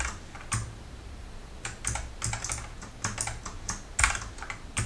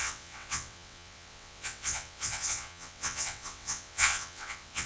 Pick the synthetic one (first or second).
second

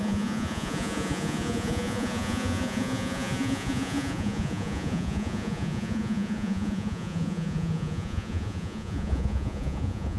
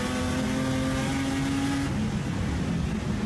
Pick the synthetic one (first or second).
first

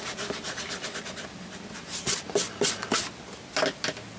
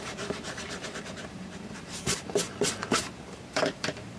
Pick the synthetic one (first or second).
second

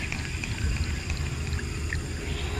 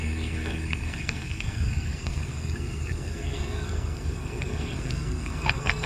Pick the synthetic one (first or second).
second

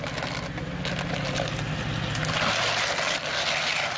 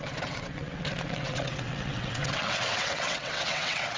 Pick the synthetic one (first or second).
second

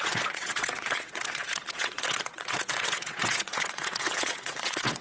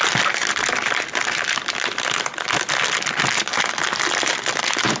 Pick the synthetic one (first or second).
first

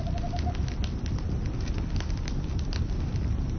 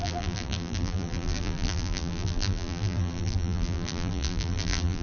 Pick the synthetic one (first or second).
second